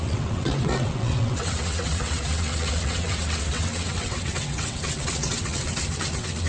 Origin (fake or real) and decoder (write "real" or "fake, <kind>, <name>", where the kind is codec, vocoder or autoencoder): fake, vocoder, WaveNeXt